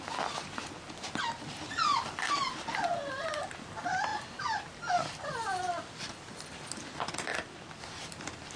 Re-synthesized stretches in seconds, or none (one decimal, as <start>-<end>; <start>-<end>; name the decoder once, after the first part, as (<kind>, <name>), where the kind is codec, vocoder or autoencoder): none